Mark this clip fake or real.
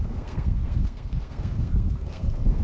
fake